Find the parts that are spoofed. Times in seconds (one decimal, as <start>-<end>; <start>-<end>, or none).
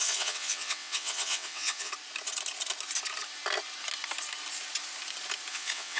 0.0-1.9; 5.5-6.0